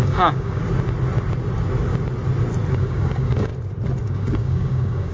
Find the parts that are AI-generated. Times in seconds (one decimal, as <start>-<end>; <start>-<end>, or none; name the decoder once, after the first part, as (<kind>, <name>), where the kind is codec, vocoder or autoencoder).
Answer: 0.0-0.6 (codec, DAC); 2.7-3.5; 4.0-5.1